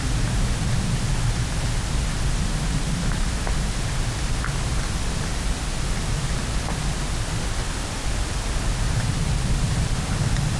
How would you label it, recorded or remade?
recorded